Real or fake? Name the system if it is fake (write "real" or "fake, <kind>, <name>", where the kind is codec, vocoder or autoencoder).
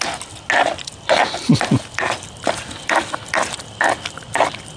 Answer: real